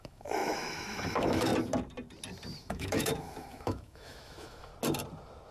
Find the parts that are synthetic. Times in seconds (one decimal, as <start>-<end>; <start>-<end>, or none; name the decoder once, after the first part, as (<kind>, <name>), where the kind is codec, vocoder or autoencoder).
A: 0.0-1.5 (autoencoder, DAC-VAE); 2.6-4.7